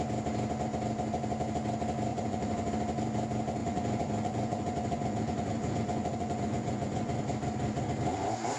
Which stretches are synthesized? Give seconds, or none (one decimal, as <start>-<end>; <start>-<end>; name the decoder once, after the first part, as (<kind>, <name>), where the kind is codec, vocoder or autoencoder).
2.1-2.7 (vocoder, Vocos); 3.6-7.2